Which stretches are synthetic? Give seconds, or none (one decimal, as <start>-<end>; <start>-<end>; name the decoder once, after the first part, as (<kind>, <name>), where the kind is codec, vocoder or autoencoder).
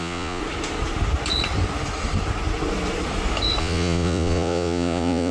0.0-0.4 (vocoder, Vocos); 3.6-5.3